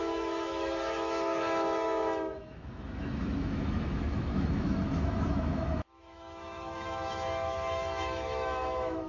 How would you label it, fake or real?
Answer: fake